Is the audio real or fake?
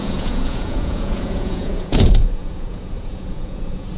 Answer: fake